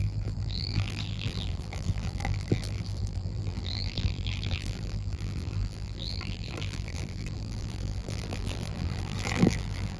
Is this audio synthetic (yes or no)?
yes